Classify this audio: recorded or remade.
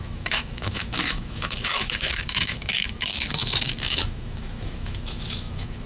remade